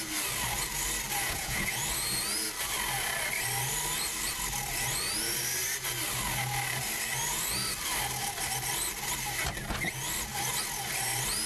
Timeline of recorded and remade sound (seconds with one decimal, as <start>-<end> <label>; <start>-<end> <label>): 0.0-1.2 recorded; 1.2-1.8 remade; 1.8-11.5 recorded